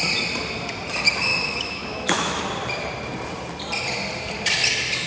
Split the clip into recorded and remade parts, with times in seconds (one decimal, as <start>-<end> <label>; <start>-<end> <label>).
0.0-1.3 recorded; 1.3-2.4 remade; 2.4-5.1 recorded